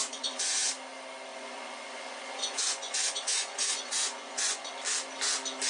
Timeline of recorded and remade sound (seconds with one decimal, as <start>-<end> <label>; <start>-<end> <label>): 0.0-0.7 remade; 0.7-1.3 recorded; 1.3-4.7 remade; 4.7-5.7 recorded